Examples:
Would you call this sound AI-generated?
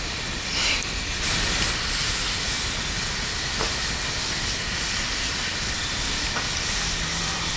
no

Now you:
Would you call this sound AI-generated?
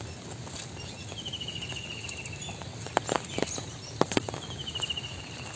no